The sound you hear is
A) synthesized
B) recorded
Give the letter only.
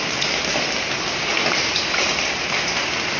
B